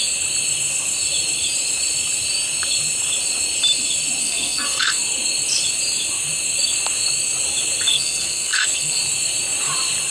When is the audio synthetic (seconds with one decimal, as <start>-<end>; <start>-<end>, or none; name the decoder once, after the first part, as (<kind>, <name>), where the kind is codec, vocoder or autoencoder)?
4.2-5.0 (codec, SNAC); 7.9-9.0